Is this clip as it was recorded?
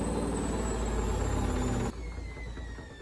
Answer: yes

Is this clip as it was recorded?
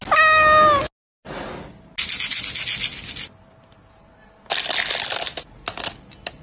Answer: yes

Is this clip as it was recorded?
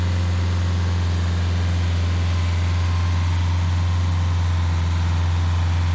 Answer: yes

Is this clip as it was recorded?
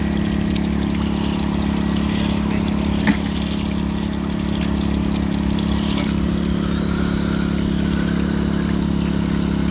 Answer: yes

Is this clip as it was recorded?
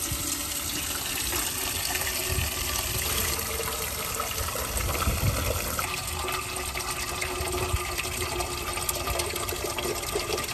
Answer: yes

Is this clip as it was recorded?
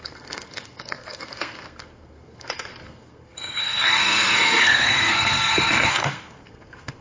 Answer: no